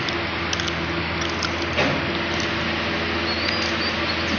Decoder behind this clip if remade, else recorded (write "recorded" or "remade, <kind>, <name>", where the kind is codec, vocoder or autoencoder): recorded